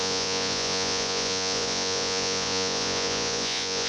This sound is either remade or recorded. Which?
remade